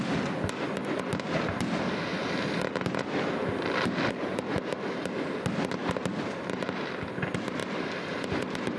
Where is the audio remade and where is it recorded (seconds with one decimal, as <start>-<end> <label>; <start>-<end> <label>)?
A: 0.0-8.8 recorded